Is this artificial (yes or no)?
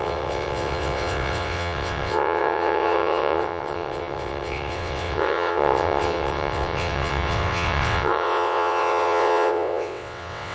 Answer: yes